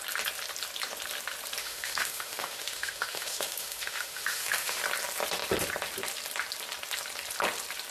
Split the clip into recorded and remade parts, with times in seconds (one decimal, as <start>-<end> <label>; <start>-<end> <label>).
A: 0.0-1.6 recorded; 1.6-4.8 remade; 4.8-7.9 recorded